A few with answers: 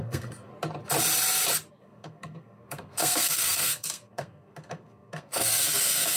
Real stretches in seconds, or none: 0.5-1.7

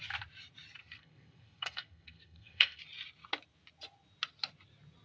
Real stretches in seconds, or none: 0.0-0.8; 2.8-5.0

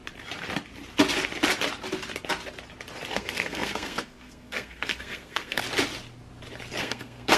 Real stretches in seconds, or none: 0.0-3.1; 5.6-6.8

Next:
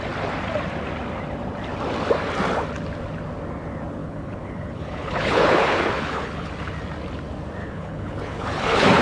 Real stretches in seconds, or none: 0.0-4.0; 6.5-7.6

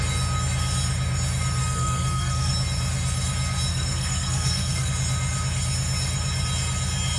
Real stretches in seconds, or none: 0.0-1.6; 2.5-3.7; 4.9-7.2